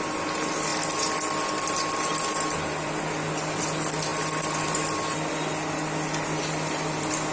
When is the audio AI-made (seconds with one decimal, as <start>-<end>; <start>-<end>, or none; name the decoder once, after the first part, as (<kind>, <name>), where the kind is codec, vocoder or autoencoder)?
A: none

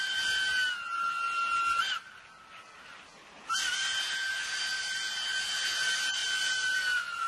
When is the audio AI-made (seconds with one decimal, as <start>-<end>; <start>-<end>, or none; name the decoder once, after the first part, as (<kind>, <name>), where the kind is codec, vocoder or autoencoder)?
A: 6.2-7.3 (vocoder, BigVGAN v2)

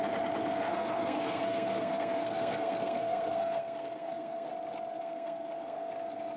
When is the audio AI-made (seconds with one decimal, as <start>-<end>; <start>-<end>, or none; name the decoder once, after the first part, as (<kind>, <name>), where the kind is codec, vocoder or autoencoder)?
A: 0.7-4.5 (codec, SNAC); 5.0-5.9

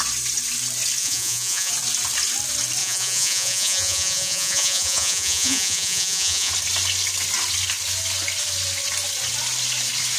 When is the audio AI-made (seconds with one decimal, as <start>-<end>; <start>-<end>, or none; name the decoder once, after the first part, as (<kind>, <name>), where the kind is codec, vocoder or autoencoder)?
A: 1.0-1.7 (vocoder, Vocos); 2.8-6.5

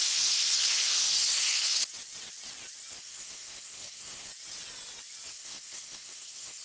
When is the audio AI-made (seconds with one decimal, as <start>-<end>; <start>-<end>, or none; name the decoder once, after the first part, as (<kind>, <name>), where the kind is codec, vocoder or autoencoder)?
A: 0.0-1.8 (codec, SNAC); 3.0-4.3; 5.3-6.6

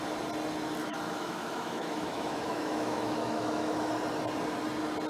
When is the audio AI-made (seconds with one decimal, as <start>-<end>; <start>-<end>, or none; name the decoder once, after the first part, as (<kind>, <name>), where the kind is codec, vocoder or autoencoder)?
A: 0.8-3.9 (autoencoder, DAC-VAE)

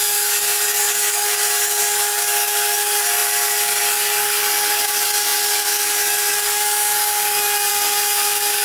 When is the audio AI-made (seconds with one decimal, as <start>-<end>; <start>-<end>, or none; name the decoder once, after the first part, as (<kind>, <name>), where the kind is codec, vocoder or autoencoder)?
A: 0.0-8.6 (codec, DAC)